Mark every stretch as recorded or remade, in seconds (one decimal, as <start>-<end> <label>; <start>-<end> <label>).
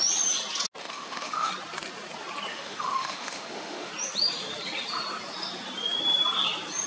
0.0-0.8 recorded; 0.8-1.5 remade; 1.5-2.5 recorded; 2.5-3.9 remade; 3.9-6.9 recorded